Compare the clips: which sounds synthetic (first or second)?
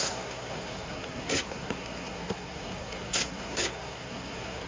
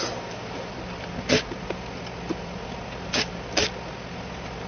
first